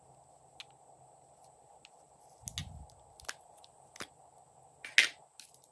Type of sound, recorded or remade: recorded